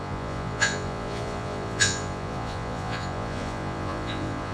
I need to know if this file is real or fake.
fake